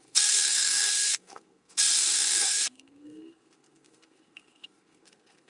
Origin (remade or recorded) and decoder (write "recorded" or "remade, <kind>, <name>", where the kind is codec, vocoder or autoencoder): remade, codec, SNAC